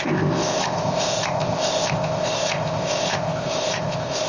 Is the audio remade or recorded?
remade